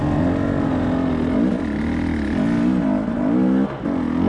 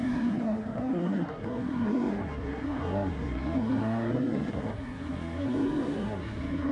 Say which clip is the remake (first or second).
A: second